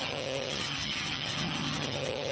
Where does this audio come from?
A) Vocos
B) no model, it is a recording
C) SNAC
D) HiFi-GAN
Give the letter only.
D